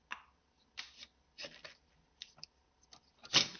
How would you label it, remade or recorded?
recorded